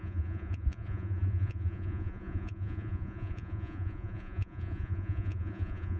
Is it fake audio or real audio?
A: fake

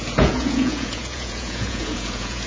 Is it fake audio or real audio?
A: fake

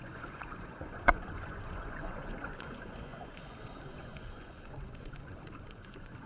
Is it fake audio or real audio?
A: fake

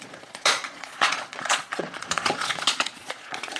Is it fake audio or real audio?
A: fake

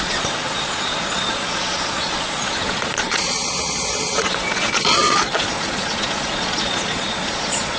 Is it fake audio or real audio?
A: fake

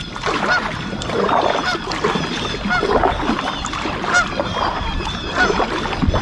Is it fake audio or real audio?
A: real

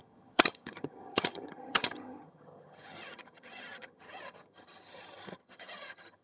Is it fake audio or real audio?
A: fake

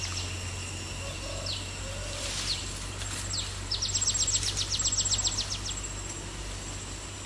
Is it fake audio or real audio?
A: real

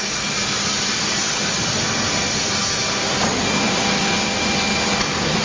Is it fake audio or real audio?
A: real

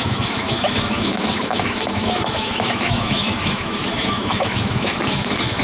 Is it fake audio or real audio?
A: fake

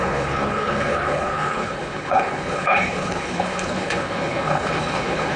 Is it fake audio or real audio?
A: fake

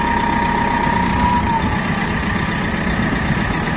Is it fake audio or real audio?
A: real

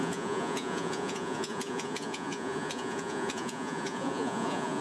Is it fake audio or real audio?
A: fake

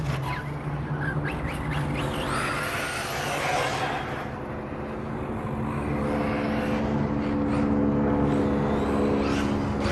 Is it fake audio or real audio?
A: real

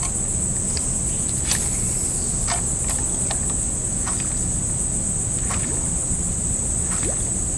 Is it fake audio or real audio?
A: real